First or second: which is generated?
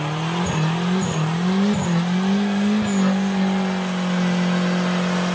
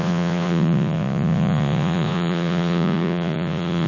second